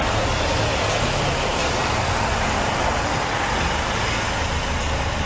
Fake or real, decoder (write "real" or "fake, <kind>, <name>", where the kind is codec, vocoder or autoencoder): real